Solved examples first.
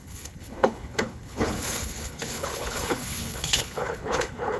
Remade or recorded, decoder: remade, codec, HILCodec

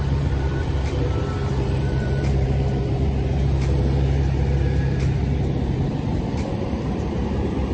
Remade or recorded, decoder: remade, vocoder, BigVGAN v2